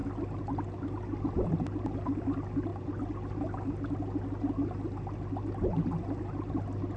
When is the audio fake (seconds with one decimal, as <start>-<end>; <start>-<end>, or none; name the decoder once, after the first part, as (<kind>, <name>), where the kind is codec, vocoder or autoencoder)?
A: none